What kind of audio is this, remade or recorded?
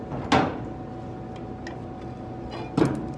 recorded